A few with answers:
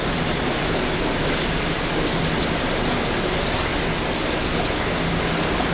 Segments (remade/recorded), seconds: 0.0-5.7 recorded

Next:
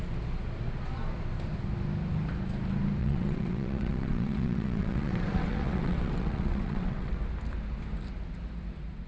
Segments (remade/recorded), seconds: 0.0-3.0 recorded; 3.0-7.2 remade; 7.2-9.1 recorded